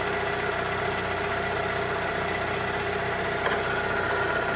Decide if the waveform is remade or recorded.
recorded